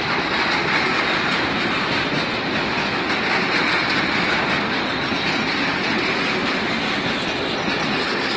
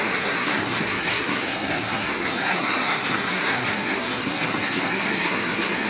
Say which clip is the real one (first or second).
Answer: first